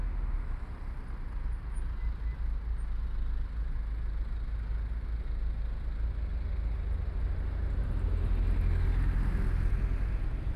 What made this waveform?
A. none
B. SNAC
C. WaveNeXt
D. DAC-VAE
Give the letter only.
A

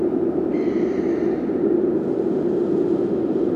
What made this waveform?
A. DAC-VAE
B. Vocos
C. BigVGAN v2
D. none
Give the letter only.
D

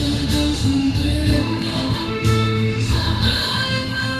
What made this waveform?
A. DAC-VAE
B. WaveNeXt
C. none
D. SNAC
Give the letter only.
A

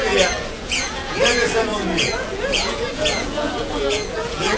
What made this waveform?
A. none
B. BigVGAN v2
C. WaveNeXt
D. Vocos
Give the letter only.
D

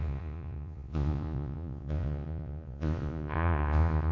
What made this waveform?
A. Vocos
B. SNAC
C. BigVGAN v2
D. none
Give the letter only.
A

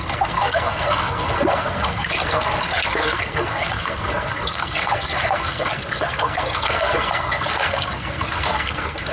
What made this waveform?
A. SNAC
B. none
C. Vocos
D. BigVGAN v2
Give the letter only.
A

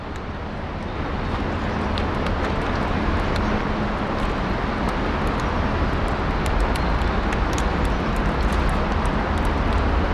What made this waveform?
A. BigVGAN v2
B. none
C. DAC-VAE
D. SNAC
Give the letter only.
B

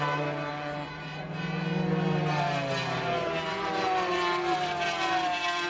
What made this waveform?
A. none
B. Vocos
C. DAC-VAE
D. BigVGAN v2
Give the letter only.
A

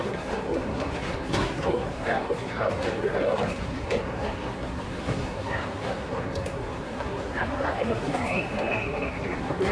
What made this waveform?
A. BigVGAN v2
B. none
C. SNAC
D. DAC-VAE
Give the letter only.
C